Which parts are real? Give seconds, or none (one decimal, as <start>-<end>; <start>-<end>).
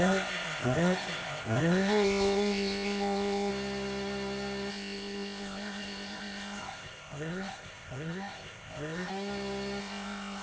3.5-4.7; 9.1-9.8